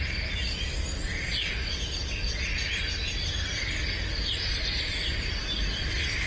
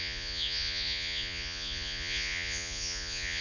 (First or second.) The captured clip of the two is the first